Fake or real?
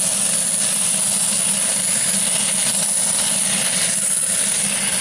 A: real